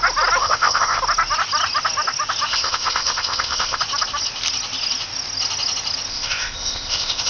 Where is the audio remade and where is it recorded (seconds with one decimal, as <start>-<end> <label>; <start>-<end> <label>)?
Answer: 0.0-0.4 recorded; 0.4-1.0 remade; 1.0-2.5 recorded; 2.5-3.8 remade; 3.8-6.1 recorded; 6.1-7.3 remade